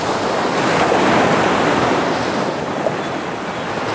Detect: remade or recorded recorded